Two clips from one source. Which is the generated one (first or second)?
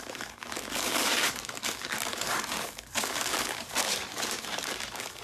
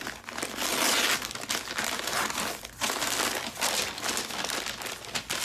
first